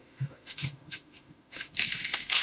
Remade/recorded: remade